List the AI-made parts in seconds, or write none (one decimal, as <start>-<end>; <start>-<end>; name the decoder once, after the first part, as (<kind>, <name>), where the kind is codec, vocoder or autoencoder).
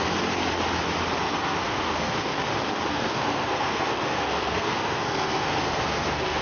1.2-2.4 (codec, SNAC); 2.9-6.4